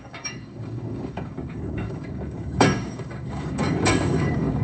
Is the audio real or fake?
fake